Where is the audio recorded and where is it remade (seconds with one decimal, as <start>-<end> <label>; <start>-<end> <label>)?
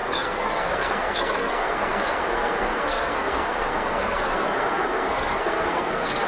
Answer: 0.0-6.3 remade